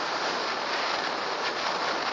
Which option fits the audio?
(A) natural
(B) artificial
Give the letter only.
A